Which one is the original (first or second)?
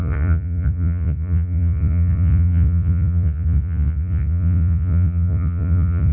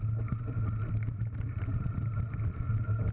second